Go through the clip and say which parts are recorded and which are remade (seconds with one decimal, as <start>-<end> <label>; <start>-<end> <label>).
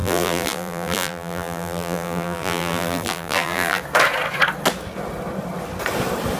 0.0-3.8 remade; 3.8-6.4 recorded